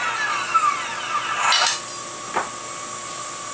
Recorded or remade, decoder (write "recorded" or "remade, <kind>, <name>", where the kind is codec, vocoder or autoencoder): recorded